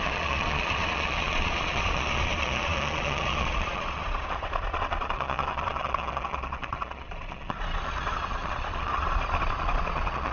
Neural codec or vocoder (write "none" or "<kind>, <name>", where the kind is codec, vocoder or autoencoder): vocoder, Vocos